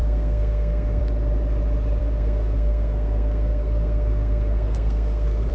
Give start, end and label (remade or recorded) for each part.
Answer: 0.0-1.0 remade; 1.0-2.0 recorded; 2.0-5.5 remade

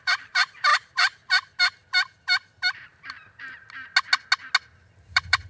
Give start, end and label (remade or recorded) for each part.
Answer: 0.0-2.9 remade; 2.9-5.1 recorded; 5.1-5.5 remade

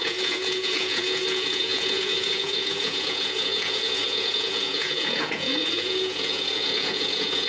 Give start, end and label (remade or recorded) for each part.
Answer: 0.0-7.5 remade

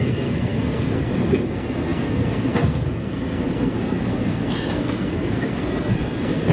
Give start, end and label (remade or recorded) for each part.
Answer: 0.0-6.5 remade